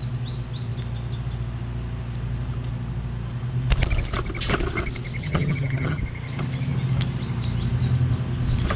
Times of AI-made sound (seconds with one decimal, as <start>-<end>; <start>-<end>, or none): 5.2-6.0